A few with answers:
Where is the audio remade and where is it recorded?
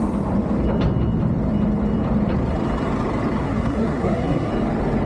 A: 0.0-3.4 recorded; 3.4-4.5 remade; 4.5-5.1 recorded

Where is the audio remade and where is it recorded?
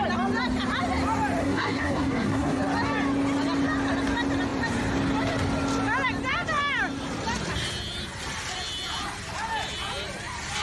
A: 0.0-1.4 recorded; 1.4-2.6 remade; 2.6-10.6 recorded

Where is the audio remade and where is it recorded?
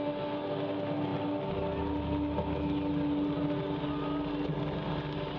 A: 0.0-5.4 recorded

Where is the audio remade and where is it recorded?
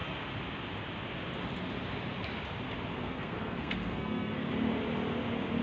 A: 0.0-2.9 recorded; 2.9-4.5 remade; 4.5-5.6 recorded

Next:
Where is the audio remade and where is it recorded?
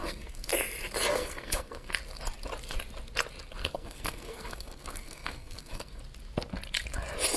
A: 0.0-0.5 remade; 0.5-1.1 recorded; 1.1-1.9 remade; 1.9-3.6 recorded; 3.6-6.0 remade; 6.0-7.4 recorded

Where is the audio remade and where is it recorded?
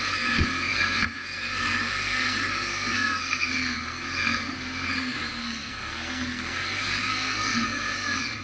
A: 0.0-8.4 remade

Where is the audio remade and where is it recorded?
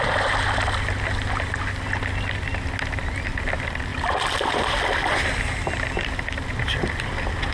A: 0.0-7.5 recorded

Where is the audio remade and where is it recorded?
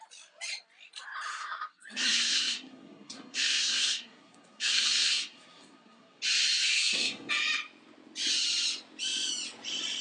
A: 0.0-1.3 recorded; 1.3-6.2 remade; 6.2-6.7 recorded; 6.7-7.3 remade; 7.3-10.0 recorded